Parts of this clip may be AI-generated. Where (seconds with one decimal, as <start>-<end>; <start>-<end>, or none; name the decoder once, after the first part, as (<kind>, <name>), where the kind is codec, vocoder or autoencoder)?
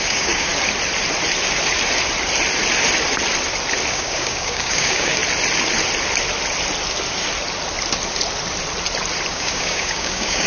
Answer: 0.0-0.5 (codec, DAC); 3.9-5.2; 9.3-10.5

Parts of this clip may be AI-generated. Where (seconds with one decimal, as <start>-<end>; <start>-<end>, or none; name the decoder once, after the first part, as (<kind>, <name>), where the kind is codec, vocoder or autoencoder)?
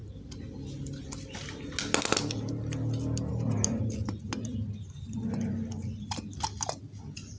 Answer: none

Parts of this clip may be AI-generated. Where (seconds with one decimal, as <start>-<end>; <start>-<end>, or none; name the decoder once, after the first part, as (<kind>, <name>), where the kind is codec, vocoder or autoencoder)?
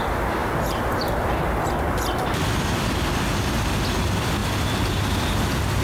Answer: none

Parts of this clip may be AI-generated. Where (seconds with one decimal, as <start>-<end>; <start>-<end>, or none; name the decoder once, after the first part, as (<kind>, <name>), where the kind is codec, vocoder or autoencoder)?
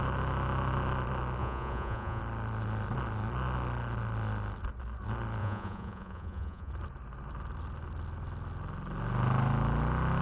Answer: 1.4-2.2 (vocoder, Vocos); 5.4-6.7